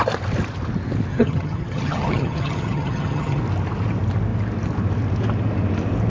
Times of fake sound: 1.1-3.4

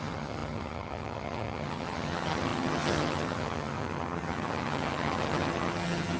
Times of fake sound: 0.0-6.2